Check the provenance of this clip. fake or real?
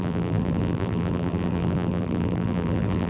fake